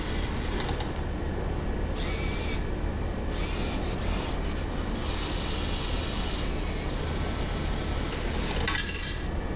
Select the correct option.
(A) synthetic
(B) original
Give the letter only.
B